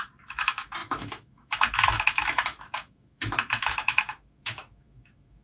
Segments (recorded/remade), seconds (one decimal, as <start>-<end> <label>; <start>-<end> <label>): 0.0-5.4 remade